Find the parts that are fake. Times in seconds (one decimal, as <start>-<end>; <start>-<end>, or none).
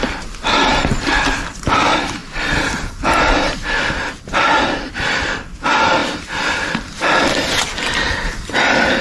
none